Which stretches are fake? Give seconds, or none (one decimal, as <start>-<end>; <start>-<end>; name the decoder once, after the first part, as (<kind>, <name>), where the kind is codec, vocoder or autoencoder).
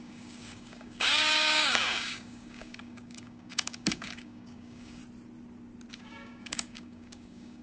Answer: 0.0-5.0 (codec, DAC); 5.9-7.6